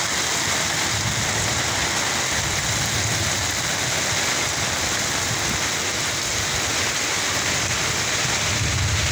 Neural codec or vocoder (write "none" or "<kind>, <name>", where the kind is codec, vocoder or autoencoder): none